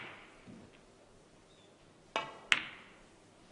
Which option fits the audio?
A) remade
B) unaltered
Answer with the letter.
B